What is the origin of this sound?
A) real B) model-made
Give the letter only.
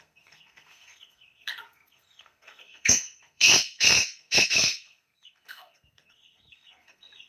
B